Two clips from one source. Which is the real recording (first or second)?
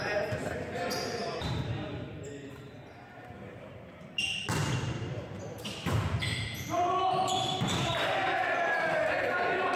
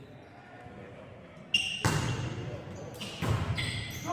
second